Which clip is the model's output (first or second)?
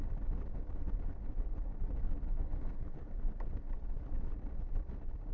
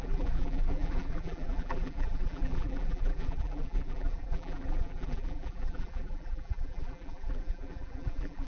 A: second